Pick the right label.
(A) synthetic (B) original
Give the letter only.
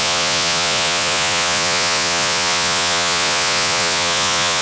A